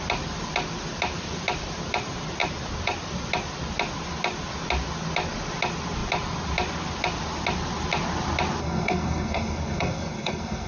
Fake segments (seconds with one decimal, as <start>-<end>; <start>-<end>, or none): 8.6-10.7